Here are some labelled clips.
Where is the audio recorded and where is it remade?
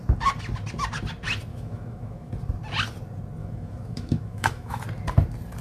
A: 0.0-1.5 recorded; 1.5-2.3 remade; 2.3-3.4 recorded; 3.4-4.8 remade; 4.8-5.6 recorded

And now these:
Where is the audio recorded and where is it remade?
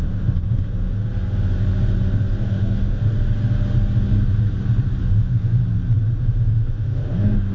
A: 0.0-1.0 remade; 1.0-2.4 recorded; 2.4-3.0 remade; 3.0-5.0 recorded; 5.0-5.5 remade; 5.5-6.2 recorded; 6.2-7.5 remade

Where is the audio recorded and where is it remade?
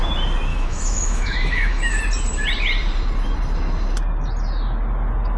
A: 0.0-0.5 recorded; 0.5-2.0 remade; 2.0-5.4 recorded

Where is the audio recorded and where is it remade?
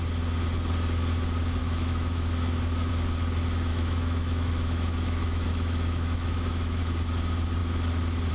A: 0.0-1.6 recorded; 1.6-2.9 remade; 2.9-3.7 recorded; 3.7-6.8 remade; 6.8-8.3 recorded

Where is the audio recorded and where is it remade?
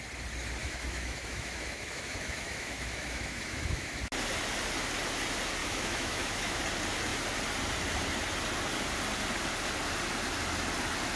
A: 0.0-0.6 recorded; 0.6-4.1 remade; 4.1-5.6 recorded; 5.6-6.6 remade; 6.6-11.2 recorded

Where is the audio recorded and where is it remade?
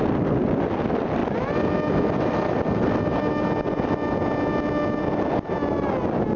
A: 0.0-6.4 recorded